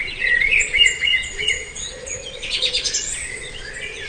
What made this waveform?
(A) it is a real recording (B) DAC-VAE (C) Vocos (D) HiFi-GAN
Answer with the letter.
C